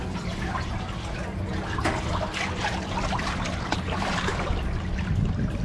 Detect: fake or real real